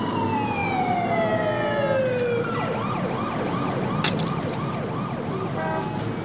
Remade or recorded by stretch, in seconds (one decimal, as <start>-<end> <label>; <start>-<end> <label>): 0.0-6.2 recorded